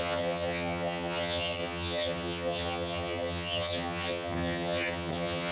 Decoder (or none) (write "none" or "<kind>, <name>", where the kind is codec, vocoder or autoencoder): vocoder, HiFi-GAN